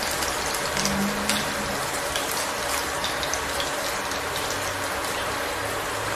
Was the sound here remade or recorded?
recorded